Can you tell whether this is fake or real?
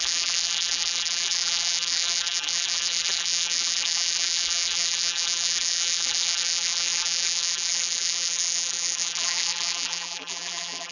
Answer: fake